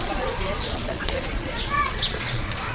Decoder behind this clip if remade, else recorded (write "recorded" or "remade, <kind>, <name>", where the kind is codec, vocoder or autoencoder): remade, vocoder, Vocos